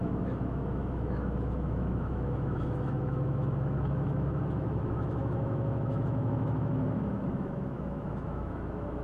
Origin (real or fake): fake